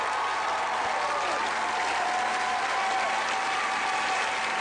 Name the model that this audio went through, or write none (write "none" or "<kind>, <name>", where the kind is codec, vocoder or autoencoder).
none